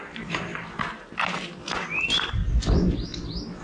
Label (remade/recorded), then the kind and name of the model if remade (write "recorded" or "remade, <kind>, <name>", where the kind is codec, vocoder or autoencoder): recorded